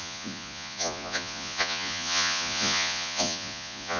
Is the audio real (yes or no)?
no